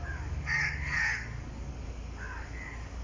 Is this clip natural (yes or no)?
no